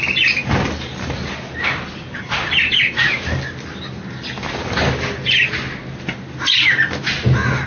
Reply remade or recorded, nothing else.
recorded